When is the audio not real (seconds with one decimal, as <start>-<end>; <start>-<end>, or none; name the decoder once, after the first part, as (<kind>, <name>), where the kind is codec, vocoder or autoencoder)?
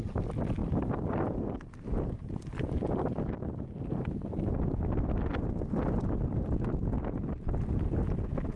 0.6-5.4 (vocoder, BigVGAN v2)